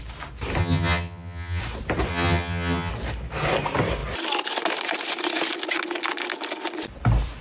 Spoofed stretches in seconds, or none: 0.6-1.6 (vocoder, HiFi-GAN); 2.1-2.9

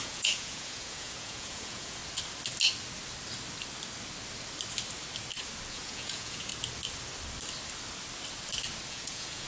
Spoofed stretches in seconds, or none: 0.0-2.0 (vocoder, Vocos); 5.7-6.5; 8.9-9.5

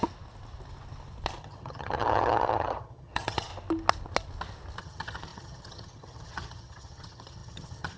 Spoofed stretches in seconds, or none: 1.4-3.5 (vocoder, HiFi-GAN); 4.8-8.0